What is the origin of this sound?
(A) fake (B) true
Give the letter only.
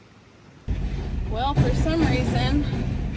B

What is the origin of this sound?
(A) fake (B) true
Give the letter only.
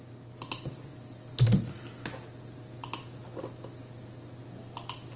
B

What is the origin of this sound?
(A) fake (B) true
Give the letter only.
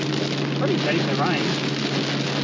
B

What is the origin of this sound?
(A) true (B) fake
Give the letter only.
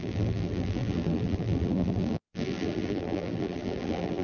B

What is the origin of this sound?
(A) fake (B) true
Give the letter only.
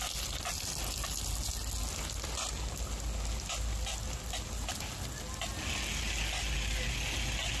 B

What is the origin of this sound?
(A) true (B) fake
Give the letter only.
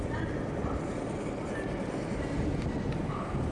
A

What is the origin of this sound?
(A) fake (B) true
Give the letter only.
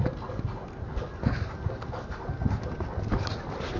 B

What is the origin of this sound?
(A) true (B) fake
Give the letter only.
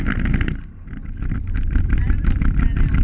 A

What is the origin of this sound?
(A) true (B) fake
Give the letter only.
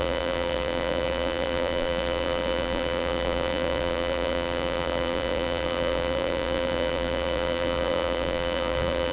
B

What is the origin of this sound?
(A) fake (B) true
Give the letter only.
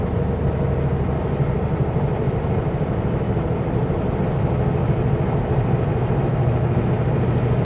B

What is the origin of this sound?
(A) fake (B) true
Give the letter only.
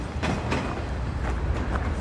B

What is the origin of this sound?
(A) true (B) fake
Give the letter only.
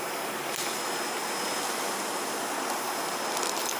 A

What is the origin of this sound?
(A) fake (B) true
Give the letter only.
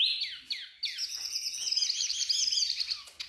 B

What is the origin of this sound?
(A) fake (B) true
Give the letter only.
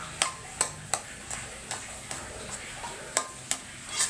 B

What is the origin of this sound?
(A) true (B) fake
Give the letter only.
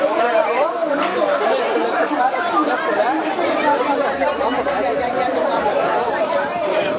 B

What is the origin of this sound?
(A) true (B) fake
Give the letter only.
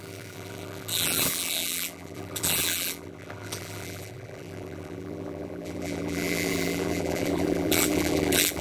B